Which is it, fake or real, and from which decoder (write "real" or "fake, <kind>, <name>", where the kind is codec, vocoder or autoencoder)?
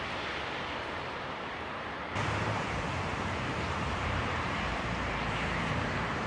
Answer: fake, vocoder, BigVGAN v2